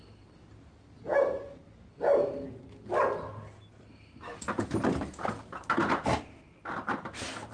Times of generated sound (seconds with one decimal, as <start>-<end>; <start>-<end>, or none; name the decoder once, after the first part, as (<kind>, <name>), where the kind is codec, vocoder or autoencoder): none